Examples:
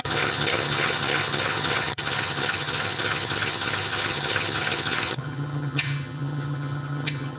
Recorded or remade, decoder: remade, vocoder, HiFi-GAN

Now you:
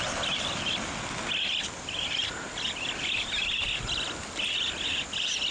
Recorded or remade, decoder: recorded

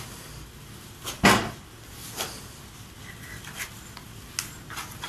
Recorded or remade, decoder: recorded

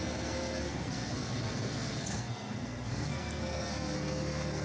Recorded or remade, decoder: remade, codec, SNAC